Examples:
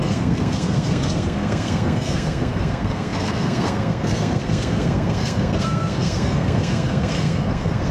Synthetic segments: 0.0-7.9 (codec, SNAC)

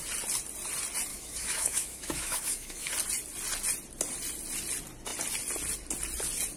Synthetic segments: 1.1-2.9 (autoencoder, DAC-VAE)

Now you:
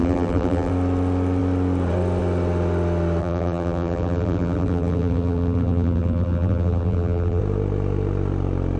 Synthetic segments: 0.0-0.7 (vocoder, BigVGAN v2); 3.2-7.4